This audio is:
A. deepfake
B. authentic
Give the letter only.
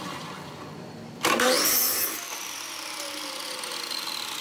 A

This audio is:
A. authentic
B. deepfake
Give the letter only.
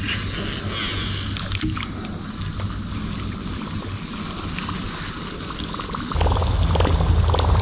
A